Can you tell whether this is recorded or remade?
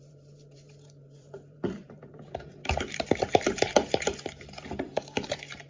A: remade